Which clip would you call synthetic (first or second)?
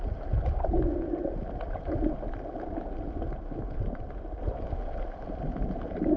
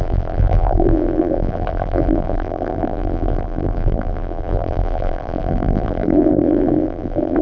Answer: second